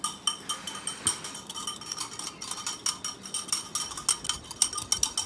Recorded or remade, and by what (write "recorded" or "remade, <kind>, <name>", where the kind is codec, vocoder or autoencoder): recorded